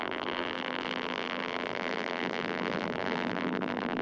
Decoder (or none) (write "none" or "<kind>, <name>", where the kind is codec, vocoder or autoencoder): vocoder, BigVGAN v2